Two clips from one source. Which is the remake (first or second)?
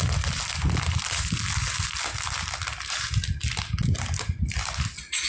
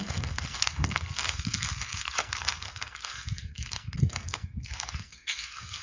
second